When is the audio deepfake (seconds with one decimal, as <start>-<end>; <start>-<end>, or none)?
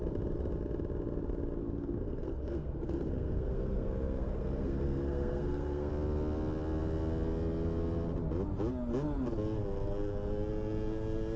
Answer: 1.6-5.9